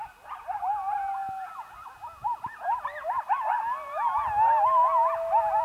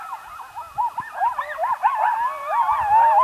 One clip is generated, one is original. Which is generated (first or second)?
second